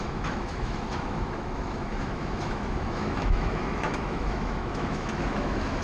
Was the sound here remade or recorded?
remade